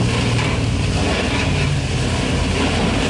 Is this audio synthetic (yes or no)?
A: no